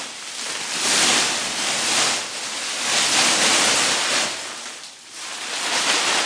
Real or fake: real